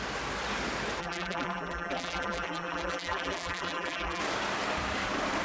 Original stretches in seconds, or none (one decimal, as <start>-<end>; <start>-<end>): 0.0-1.0; 4.2-5.4